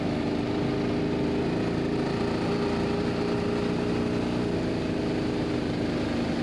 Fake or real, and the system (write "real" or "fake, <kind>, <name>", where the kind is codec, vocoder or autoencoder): real